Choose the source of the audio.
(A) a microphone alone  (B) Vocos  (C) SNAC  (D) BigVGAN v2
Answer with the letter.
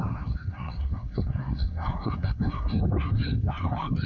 C